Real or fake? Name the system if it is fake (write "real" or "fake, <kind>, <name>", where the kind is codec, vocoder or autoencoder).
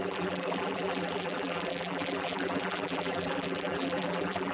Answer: fake, vocoder, BigVGAN v2